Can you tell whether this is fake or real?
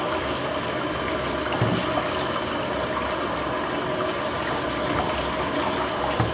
real